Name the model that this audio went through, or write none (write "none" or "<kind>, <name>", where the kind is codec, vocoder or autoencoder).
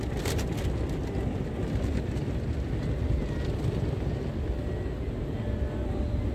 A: none